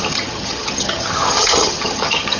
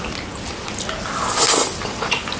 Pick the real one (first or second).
second